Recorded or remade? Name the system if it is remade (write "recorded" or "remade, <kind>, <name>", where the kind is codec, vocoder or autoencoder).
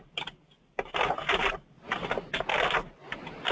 recorded